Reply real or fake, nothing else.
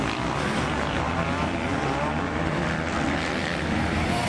real